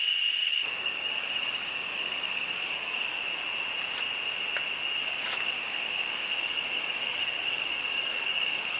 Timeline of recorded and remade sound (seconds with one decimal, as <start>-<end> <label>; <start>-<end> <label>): 0.0-0.4 recorded; 0.4-3.2 remade; 3.2-5.0 recorded; 5.0-8.8 remade